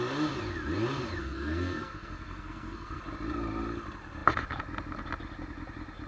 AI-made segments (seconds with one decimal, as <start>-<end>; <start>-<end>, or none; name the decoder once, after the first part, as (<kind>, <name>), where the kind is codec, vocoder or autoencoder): 1.2-3.0 (codec, SNAC)